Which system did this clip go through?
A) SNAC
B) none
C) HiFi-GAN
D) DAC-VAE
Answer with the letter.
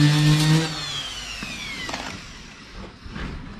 B